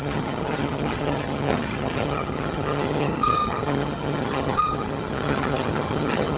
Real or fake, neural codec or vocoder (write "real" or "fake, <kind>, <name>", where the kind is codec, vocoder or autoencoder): fake, vocoder, HiFi-GAN